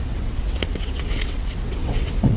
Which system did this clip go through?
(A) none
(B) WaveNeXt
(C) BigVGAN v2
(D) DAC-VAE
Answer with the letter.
B